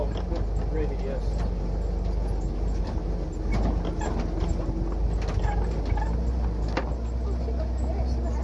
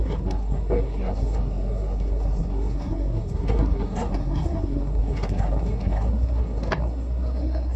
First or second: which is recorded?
first